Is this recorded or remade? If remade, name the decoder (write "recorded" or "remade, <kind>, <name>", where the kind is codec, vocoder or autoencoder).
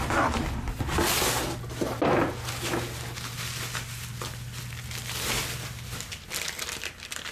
recorded